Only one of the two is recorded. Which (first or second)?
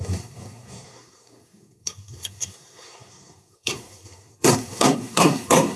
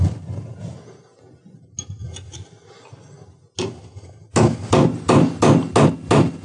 second